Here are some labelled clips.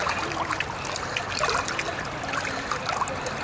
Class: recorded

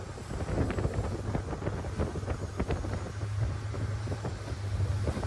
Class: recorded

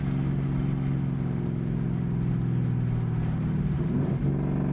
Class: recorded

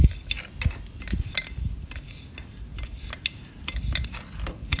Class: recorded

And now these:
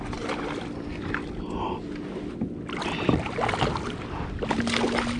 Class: recorded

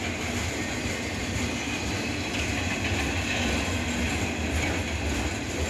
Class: recorded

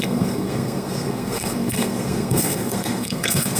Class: remade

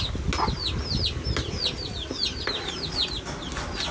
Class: recorded